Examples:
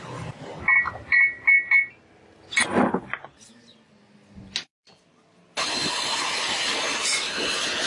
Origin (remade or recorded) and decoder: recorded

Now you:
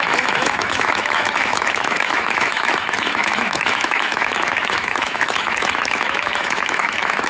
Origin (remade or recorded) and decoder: remade, autoencoder, DAC-VAE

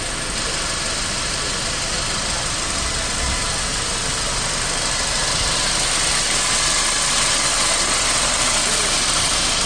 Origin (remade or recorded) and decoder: recorded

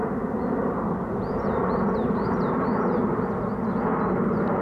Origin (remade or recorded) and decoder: recorded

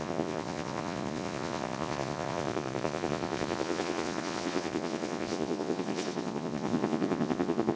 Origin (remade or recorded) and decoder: remade, vocoder, Vocos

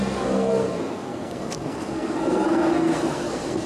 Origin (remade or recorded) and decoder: remade, codec, SNAC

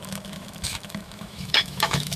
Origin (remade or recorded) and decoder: remade, autoencoder, DAC-VAE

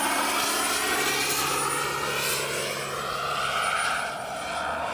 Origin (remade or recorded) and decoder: recorded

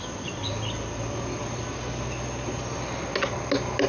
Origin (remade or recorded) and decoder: recorded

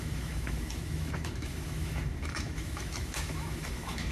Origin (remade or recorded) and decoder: remade, autoencoder, DAC-VAE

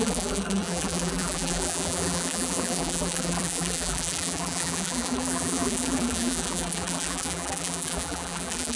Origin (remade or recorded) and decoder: remade, vocoder, BigVGAN v2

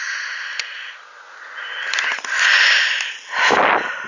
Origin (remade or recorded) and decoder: recorded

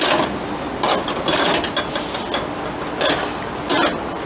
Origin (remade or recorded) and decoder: recorded